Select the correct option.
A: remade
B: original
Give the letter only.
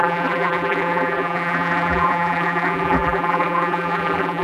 A